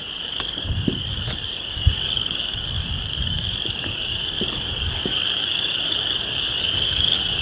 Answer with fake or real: fake